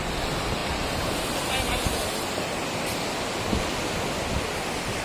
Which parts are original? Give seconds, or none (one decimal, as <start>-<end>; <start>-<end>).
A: 0.0-5.0